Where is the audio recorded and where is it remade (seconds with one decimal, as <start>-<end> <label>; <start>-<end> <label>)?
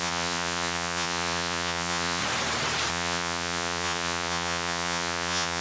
0.0-2.2 remade; 2.2-2.9 recorded; 2.9-5.6 remade